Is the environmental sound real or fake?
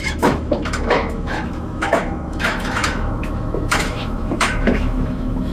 fake